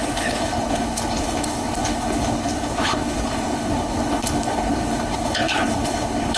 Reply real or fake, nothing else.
fake